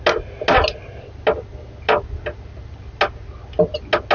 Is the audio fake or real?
real